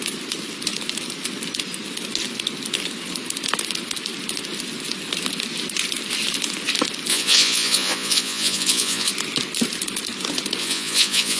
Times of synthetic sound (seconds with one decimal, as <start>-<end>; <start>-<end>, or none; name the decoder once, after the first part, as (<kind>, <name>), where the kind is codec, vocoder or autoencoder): 7.1-9.1 (vocoder, Vocos); 10.6-11.4